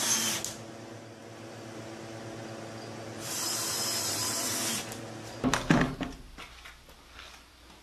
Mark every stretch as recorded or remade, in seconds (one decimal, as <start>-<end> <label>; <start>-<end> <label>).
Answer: 0.0-7.8 recorded